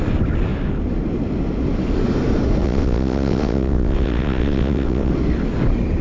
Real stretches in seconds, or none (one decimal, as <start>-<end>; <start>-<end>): 0.0-2.6; 5.1-6.0